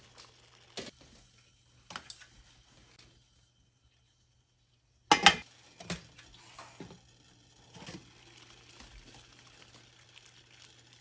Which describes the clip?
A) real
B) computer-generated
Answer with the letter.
A